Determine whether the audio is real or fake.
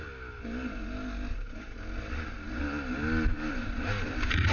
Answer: real